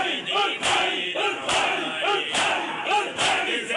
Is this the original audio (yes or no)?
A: yes